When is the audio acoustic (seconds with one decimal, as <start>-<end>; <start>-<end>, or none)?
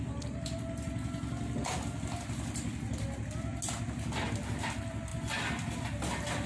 0.0-6.5